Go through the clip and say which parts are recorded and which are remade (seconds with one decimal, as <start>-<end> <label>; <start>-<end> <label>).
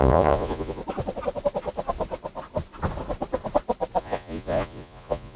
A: 0.0-0.8 remade; 0.8-4.0 recorded; 4.0-5.4 remade